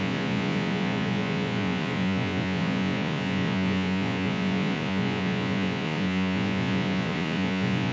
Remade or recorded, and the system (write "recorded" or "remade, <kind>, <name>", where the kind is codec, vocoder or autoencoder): remade, vocoder, Vocos